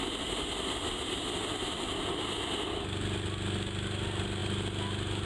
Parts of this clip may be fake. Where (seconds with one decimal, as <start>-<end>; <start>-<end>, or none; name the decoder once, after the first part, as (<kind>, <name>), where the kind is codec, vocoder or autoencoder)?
none